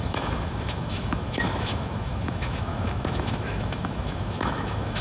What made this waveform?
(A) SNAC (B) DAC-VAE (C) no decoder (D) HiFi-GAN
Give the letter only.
B